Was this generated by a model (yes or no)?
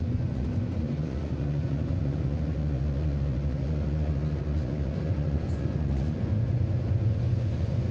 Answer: yes